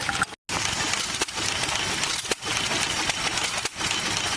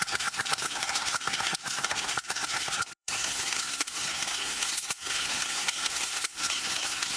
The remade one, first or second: second